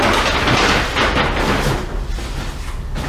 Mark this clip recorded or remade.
recorded